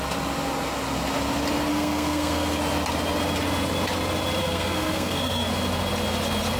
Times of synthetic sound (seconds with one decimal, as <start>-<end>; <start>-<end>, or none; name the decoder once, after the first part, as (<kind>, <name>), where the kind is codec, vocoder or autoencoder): 1.7-2.6 (codec, SNAC); 4.4-5.5